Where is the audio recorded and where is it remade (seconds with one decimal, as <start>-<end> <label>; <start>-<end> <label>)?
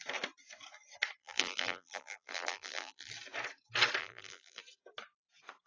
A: 0.0-1.2 recorded; 1.2-3.1 remade; 3.1-4.0 recorded; 4.0-4.6 remade; 4.6-5.7 recorded